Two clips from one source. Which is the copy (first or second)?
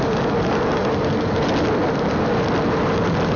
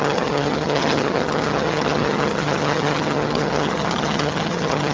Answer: second